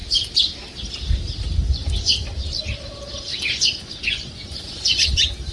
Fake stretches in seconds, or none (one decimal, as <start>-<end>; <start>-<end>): 3.3-5.1